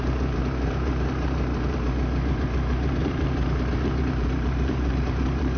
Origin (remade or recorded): remade